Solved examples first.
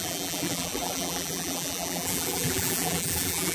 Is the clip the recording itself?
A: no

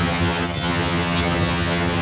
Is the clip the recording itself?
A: no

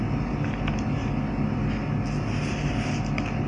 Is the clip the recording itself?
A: yes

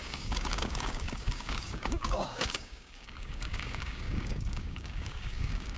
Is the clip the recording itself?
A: no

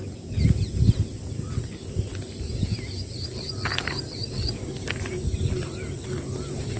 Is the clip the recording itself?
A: yes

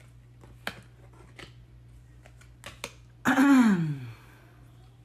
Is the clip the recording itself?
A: yes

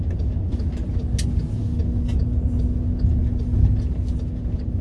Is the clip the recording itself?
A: yes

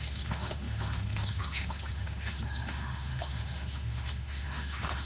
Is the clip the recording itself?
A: no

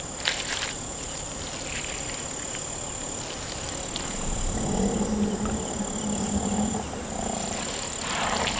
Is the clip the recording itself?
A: yes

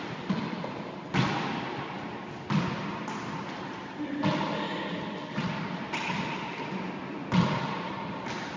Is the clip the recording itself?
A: yes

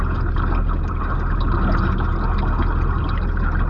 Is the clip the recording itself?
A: yes